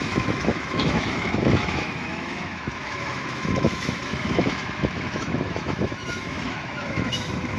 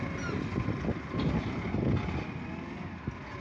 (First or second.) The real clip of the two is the second